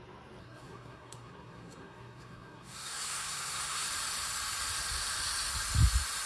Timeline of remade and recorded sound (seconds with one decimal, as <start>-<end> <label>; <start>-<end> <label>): 0.0-0.4 recorded; 0.4-3.9 remade; 3.9-6.3 recorded